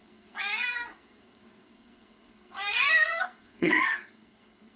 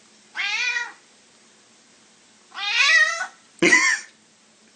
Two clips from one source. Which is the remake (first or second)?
first